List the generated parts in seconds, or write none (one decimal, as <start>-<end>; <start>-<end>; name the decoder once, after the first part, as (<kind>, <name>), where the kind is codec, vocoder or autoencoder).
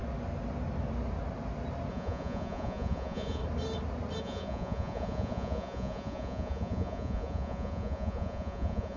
1.9-3.4 (vocoder, Vocos); 4.2-9.0